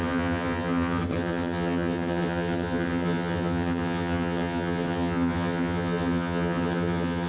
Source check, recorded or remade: remade